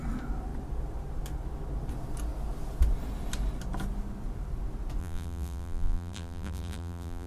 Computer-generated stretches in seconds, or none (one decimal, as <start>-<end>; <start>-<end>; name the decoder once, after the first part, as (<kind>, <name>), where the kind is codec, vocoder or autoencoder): 5.0-7.3 (vocoder, BigVGAN v2)